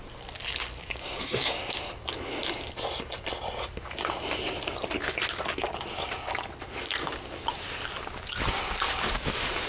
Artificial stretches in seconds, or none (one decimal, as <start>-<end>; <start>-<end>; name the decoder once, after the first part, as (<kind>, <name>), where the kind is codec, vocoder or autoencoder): 0.8-1.8 (codec, DAC)